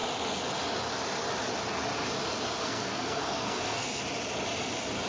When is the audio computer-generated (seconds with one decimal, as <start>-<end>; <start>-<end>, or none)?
2.6-4.0

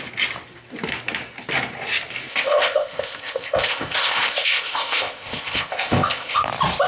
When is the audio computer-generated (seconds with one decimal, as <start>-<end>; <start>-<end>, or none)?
2.3-6.4

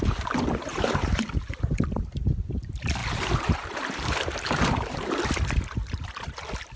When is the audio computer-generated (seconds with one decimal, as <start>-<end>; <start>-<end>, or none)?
0.7-2.4; 3.0-5.1

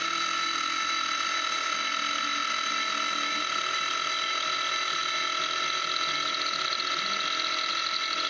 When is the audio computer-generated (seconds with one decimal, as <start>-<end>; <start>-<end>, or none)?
none

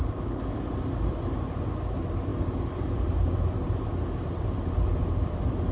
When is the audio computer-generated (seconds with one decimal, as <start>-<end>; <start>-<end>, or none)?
none

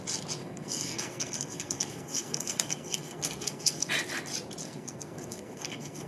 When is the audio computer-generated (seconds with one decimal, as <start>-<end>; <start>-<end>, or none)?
0.4-3.9; 4.6-6.1

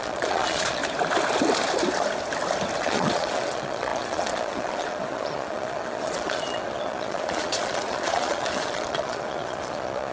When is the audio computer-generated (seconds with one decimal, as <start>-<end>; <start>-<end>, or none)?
0.0-0.8; 2.8-10.1